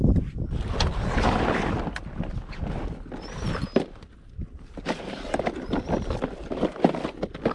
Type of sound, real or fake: real